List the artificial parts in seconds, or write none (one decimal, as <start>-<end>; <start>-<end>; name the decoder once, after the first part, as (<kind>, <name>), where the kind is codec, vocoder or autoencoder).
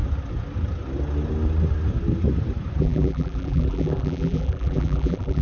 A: 2.8-5.4 (vocoder, BigVGAN v2)